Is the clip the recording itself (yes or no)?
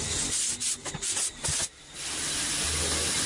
yes